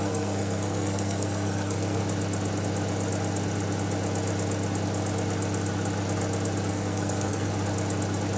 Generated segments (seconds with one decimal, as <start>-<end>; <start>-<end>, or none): 0.0-2.0; 6.7-7.5